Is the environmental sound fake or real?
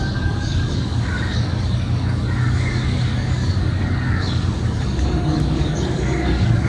fake